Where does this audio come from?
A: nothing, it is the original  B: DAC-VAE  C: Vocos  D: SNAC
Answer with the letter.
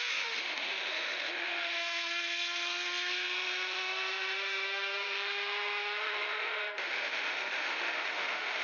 B